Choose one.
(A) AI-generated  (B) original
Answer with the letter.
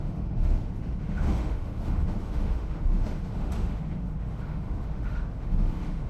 A